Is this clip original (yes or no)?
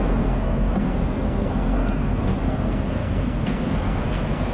no